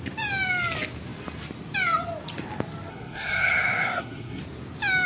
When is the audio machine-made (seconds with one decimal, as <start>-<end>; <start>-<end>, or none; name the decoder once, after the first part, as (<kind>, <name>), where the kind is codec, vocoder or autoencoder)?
2.9-4.4 (codec, SNAC)